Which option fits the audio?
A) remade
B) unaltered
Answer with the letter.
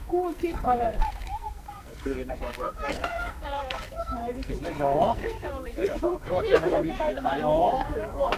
A